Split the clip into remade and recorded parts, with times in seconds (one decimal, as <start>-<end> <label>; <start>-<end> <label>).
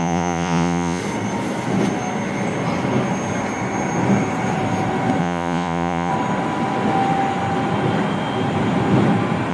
0.0-1.0 remade; 1.0-5.2 recorded; 5.2-6.1 remade; 6.1-9.5 recorded